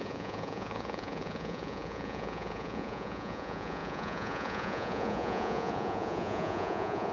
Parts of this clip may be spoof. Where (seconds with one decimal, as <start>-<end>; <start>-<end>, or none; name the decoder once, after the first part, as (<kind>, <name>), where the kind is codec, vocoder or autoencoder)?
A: 0.0-7.1 (vocoder, Vocos)